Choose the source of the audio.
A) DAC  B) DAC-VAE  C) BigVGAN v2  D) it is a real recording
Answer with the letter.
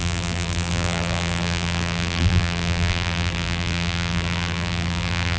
C